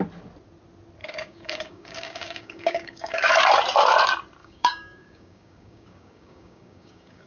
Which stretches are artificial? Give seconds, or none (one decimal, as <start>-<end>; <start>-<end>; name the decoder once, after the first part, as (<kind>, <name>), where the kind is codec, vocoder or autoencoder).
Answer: 1.0-3.3 (codec, DAC); 4.4-7.3